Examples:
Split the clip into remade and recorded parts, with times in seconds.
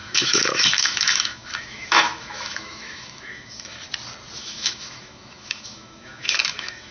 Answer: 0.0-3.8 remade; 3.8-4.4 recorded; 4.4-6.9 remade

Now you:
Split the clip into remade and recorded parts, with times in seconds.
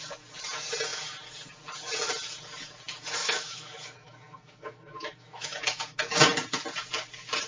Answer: 0.0-3.2 recorded; 3.2-5.6 remade; 5.6-7.5 recorded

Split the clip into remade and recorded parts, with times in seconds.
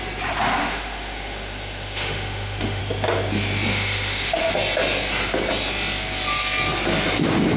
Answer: 0.0-0.6 recorded; 0.6-2.8 remade; 2.8-3.7 recorded; 3.7-4.5 remade; 4.5-7.6 recorded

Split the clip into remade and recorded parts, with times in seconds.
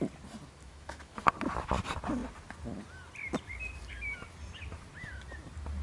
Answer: 0.0-0.6 recorded; 0.6-1.1 remade; 1.1-5.8 recorded